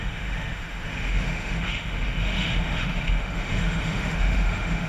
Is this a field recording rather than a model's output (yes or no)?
no